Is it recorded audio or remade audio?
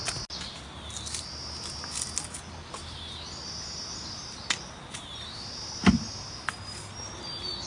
recorded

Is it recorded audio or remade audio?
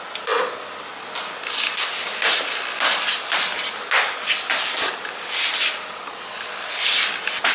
recorded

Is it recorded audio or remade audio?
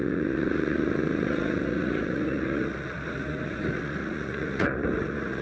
remade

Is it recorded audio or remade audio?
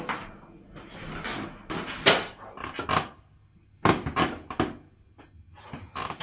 recorded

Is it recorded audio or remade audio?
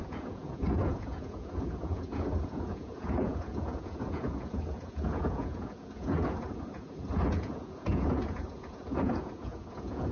remade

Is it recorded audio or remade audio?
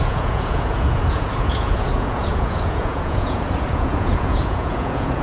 remade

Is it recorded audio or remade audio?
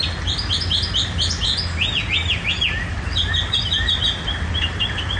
recorded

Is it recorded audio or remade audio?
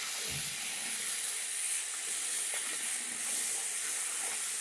recorded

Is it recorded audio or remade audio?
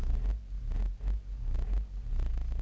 recorded